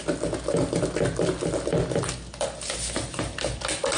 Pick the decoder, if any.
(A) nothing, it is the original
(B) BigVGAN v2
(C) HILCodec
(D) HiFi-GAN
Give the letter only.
A